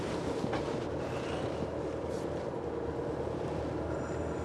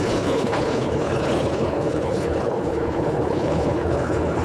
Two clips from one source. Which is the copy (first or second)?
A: second